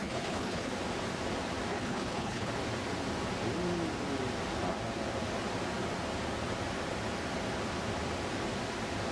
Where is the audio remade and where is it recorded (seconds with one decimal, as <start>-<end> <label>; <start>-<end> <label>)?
0.0-0.7 remade; 0.7-1.7 recorded; 1.7-2.5 remade; 2.5-9.1 recorded